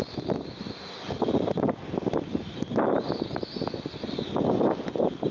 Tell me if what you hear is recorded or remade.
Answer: recorded